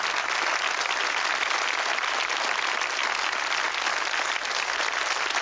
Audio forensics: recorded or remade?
recorded